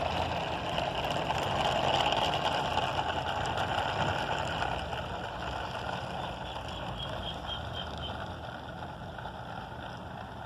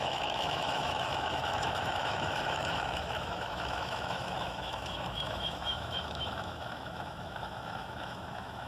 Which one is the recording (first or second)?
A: first